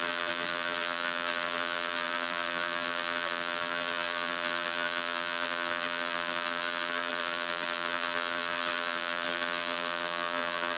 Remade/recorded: remade